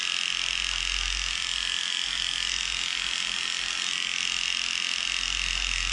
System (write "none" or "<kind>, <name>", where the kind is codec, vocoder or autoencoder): none